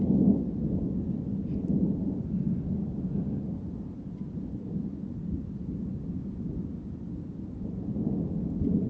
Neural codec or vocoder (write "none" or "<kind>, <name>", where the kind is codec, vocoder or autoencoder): none